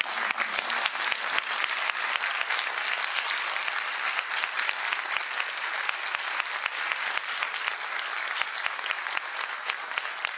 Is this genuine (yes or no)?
yes